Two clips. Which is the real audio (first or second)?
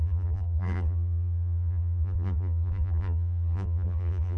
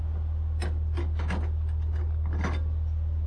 second